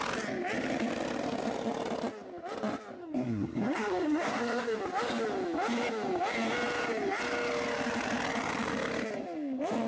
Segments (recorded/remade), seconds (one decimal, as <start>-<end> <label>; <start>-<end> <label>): 0.0-3.0 recorded; 3.0-4.8 remade; 4.8-9.9 recorded